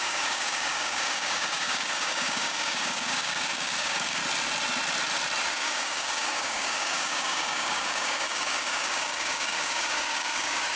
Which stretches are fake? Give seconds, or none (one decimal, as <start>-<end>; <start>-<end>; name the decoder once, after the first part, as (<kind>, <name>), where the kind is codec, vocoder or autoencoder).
0.0-4.2 (codec, DAC); 5.5-10.8